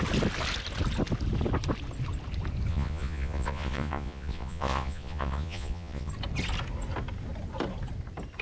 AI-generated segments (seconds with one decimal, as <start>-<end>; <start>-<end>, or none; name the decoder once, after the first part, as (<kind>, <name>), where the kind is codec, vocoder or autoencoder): 2.7-6.1 (vocoder, Vocos)